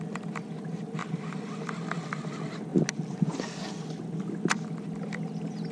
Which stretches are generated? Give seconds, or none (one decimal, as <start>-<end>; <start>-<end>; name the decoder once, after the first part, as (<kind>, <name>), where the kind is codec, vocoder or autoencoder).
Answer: 1.0-2.3 (vocoder, BigVGAN v2)